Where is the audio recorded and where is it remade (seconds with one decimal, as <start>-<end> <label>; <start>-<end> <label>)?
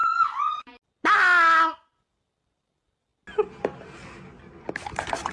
0.0-0.6 remade; 0.6-5.3 recorded